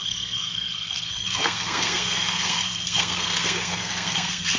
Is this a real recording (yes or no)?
no